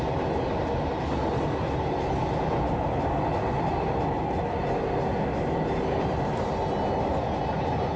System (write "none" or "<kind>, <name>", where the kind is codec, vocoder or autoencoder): none